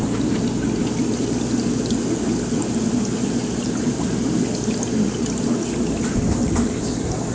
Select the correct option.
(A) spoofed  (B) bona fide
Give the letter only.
B